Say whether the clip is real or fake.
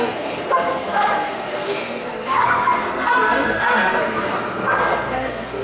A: fake